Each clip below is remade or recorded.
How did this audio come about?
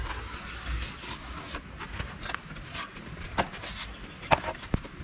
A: recorded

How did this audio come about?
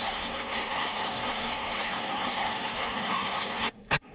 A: remade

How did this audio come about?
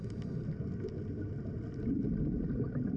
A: recorded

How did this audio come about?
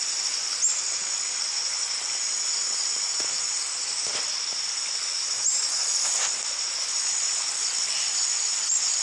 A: recorded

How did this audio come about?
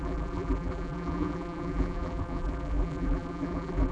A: remade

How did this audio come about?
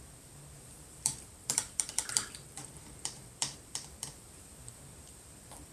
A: remade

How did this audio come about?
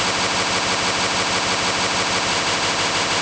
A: recorded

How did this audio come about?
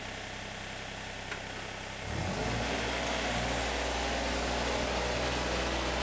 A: recorded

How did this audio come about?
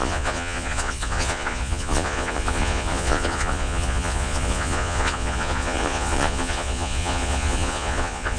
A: remade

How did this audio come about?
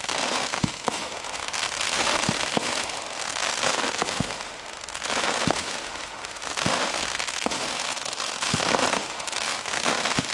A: remade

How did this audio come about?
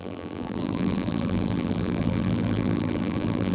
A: remade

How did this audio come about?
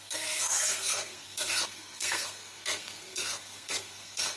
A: remade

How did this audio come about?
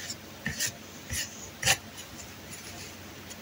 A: recorded